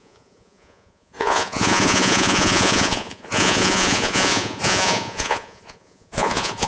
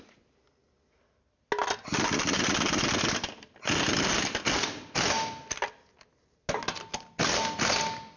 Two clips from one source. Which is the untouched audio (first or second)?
second